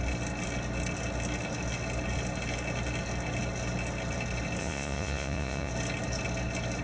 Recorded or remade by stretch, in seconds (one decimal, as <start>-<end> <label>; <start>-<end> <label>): 0.0-4.6 recorded; 4.6-5.7 remade; 5.7-6.8 recorded